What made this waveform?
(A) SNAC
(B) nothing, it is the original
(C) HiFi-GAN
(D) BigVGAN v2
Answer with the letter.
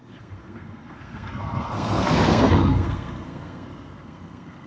A